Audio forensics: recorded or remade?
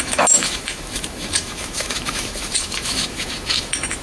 remade